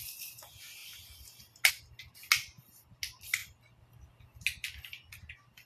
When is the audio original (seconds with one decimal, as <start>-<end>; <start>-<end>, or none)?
0.0-5.7